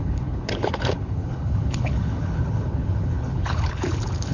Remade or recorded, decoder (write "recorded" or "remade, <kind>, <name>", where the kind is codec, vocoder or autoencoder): remade, codec, HILCodec